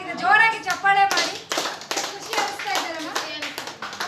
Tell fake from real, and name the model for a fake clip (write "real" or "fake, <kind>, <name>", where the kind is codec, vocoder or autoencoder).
real